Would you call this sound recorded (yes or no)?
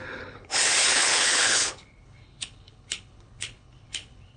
no